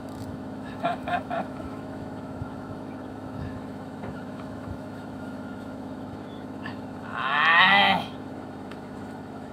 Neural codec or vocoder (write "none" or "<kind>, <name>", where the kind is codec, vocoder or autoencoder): autoencoder, DAC-VAE